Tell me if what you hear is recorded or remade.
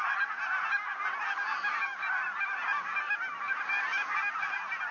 recorded